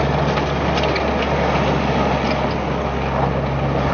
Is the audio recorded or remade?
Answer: recorded